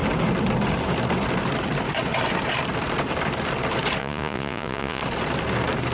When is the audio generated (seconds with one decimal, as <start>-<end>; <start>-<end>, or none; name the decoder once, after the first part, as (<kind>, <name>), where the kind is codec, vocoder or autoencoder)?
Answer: 4.0-5.0 (vocoder, Vocos)